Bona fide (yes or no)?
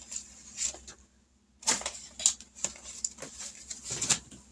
yes